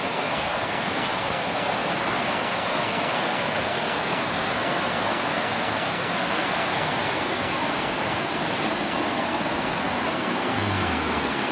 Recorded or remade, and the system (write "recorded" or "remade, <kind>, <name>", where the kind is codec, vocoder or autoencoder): remade, codec, SNAC